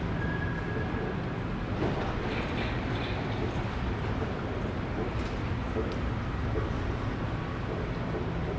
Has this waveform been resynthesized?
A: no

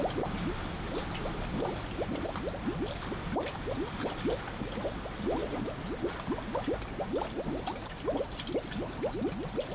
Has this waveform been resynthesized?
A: no